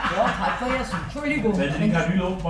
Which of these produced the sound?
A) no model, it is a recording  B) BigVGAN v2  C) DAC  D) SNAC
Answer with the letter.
A